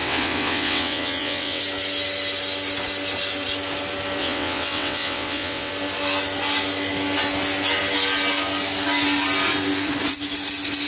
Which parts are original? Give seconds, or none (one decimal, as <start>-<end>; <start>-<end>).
1.6-4.2; 5.7-10.9